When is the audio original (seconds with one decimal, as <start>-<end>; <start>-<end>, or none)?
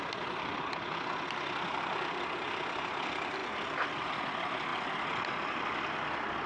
0.0-6.5